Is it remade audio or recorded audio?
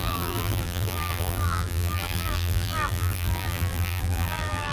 remade